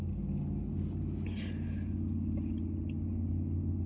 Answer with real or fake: real